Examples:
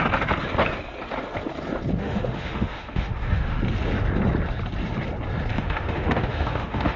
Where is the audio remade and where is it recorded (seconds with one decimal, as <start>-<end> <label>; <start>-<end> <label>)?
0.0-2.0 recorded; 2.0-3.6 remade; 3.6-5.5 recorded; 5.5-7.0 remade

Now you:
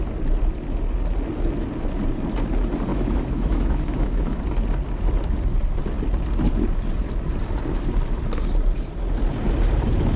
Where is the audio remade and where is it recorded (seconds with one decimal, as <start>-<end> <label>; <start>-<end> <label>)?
0.0-2.9 recorded; 2.9-4.4 remade; 4.4-10.2 recorded

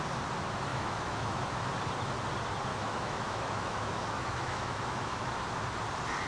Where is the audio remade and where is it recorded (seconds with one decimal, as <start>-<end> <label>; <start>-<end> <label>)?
0.0-0.7 recorded; 0.7-1.6 remade; 1.6-2.7 recorded; 2.7-5.3 remade; 5.3-6.3 recorded

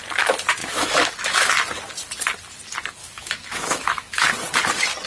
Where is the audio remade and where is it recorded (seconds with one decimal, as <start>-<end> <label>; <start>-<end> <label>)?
0.0-0.6 recorded; 0.6-1.5 remade; 1.5-3.0 recorded; 3.0-4.3 remade; 4.3-5.1 recorded